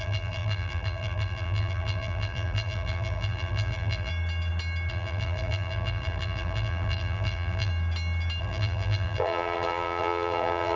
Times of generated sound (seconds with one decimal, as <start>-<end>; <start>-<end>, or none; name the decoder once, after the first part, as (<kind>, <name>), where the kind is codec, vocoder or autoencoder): 0.0-4.1 (vocoder, BigVGAN v2); 4.9-7.7; 8.4-10.8